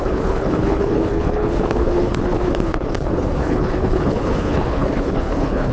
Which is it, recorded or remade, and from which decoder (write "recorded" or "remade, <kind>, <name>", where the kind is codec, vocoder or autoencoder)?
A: remade, codec, HILCodec